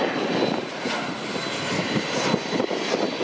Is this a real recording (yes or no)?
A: yes